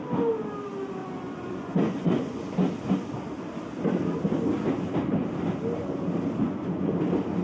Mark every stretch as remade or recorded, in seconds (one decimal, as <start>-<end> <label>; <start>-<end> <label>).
0.0-1.0 recorded; 1.0-2.4 remade; 2.4-6.4 recorded; 6.4-6.9 remade; 6.9-7.4 recorded